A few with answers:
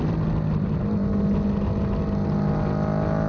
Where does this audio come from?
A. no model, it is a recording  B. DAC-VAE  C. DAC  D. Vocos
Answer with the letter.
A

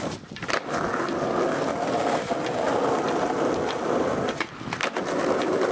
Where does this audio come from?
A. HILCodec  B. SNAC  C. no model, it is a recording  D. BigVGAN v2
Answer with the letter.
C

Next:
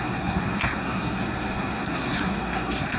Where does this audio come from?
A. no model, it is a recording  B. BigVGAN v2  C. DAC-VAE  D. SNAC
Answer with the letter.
D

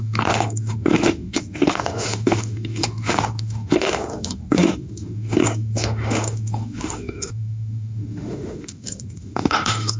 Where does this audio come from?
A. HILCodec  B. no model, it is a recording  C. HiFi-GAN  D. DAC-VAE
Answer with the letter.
D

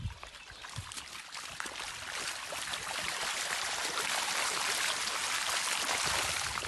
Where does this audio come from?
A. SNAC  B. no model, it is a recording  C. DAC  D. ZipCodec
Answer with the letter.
B